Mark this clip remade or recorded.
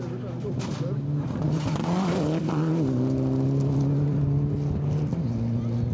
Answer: recorded